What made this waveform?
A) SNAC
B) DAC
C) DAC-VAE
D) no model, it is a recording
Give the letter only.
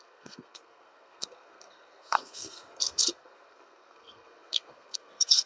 A